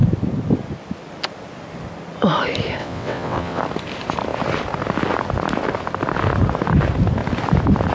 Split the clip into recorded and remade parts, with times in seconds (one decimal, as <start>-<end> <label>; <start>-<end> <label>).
0.0-2.8 recorded; 2.8-3.6 remade; 3.6-7.9 recorded